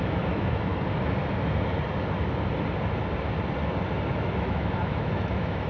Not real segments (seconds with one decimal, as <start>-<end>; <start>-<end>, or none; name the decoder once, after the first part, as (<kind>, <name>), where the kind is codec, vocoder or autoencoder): 0.0-0.7 (autoencoder, DAC-VAE); 4.1-5.7